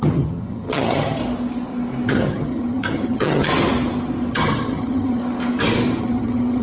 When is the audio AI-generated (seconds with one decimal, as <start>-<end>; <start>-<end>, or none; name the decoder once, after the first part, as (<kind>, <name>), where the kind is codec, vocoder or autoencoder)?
0.0-1.2 (vocoder, HiFi-GAN); 2.1-3.5; 4.3-5.2; 6.0-6.6